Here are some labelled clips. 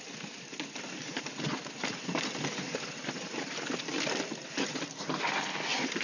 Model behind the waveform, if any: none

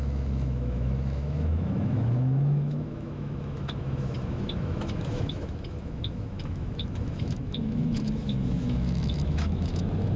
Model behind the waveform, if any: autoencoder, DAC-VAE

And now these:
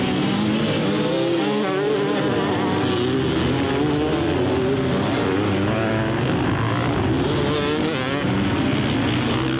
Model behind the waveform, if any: none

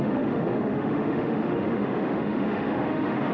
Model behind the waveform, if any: autoencoder, DAC-VAE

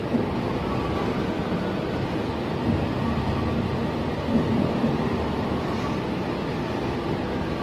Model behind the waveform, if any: none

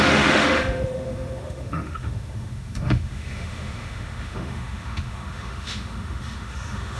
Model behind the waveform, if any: autoencoder, DAC-VAE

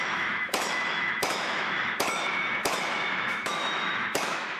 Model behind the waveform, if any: autoencoder, DAC-VAE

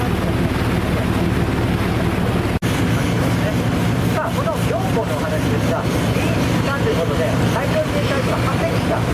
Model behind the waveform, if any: none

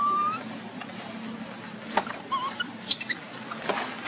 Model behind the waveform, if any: none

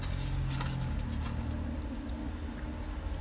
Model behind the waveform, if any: none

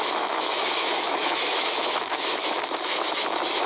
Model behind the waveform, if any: autoencoder, DAC-VAE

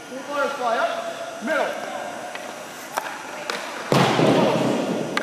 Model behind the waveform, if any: none